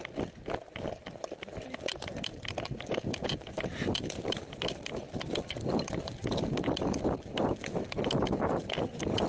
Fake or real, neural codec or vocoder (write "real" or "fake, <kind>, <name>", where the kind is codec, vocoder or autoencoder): real